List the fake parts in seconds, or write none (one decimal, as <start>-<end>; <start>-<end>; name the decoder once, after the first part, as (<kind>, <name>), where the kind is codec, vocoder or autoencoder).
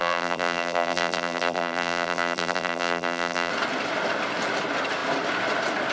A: 0.0-3.5 (vocoder, BigVGAN v2)